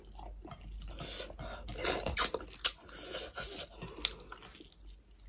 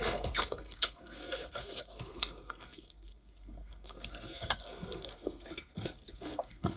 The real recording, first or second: first